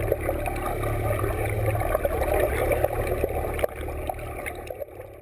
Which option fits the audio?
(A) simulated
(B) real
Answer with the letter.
B